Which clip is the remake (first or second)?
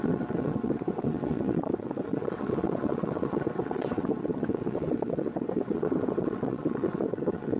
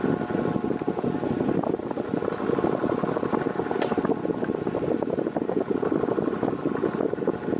first